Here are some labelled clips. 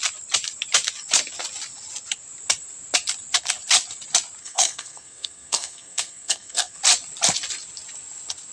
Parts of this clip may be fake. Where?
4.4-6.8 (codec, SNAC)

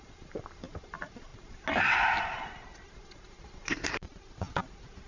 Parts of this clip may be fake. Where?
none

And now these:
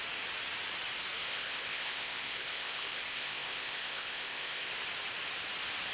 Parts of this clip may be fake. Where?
1.2-4.7 (codec, ZipCodec)

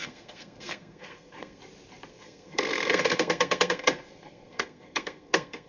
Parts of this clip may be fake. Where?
0.0-1.6 (codec, SNAC); 2.1-5.7